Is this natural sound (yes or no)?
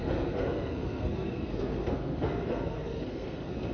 no